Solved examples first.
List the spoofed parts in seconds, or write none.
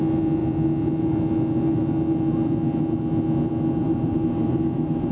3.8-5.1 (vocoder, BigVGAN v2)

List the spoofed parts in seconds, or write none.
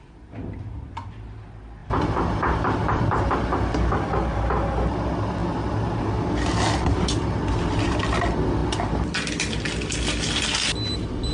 1.8-3.4 (vocoder, BigVGAN v2)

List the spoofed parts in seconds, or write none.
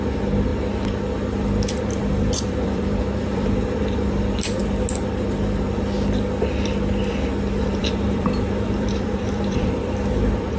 0.0-0.5 (vocoder, BigVGAN v2); 1.8-4.6; 7.7-10.6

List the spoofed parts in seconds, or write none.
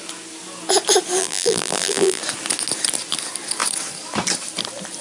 1.2-2.2 (vocoder, BigVGAN v2)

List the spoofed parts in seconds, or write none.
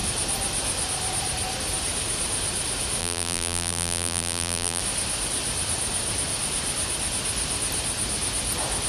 3.0-4.8 (vocoder, BigVGAN v2)